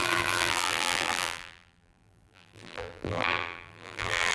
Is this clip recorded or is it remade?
remade